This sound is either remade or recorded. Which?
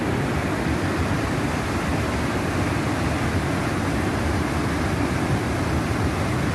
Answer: recorded